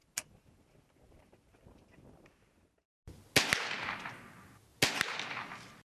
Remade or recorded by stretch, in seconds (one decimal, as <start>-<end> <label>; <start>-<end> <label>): 0.0-5.9 recorded